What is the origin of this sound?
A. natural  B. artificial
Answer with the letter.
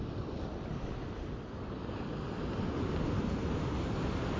A